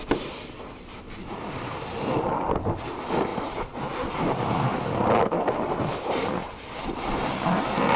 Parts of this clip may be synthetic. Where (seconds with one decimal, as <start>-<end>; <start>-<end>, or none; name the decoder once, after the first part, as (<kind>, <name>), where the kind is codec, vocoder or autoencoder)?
1.2-2.3 (vocoder, BigVGAN v2); 3.3-7.6